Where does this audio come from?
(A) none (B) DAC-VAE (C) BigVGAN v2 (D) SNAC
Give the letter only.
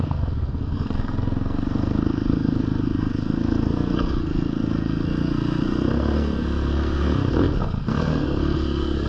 D